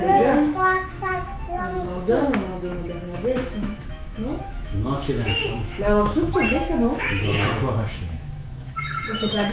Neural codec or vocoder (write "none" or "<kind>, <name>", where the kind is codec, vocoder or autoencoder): autoencoder, DAC-VAE